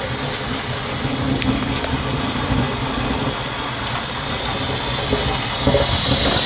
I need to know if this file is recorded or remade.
recorded